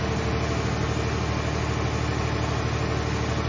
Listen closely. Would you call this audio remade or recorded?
recorded